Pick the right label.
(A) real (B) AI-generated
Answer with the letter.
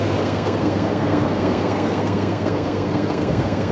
B